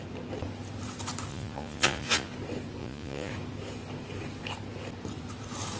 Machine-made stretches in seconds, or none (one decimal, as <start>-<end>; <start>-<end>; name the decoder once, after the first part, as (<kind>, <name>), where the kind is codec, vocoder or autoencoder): 1.3-2.3 (vocoder, Vocos); 2.8-3.3